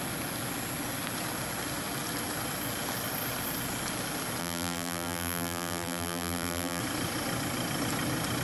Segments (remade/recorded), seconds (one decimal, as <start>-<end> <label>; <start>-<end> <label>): 0.0-4.4 recorded; 4.4-6.8 remade; 6.8-8.4 recorded